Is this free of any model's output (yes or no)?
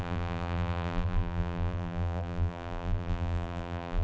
no